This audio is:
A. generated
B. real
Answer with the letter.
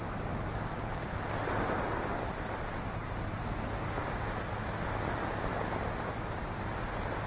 B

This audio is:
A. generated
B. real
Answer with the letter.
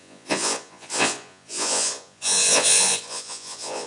A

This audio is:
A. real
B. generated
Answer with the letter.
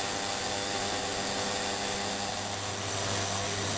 A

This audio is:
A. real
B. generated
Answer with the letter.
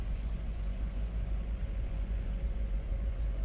B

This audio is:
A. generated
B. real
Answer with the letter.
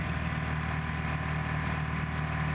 B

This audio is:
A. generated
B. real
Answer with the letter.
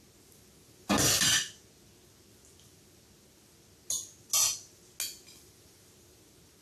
B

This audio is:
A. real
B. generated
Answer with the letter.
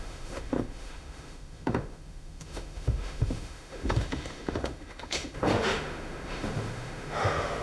B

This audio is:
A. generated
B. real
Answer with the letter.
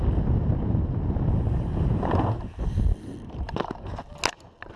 B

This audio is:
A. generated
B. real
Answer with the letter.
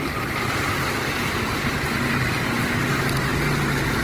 B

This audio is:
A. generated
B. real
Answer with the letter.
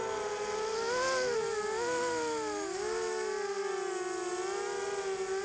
B